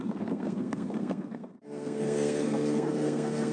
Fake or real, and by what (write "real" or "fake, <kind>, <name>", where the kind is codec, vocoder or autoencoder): fake, codec, SNAC